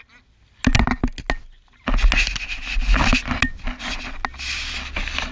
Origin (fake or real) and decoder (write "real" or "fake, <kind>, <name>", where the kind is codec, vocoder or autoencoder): real